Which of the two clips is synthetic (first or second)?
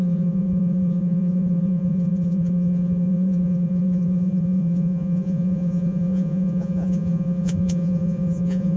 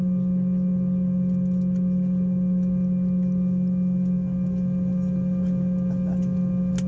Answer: first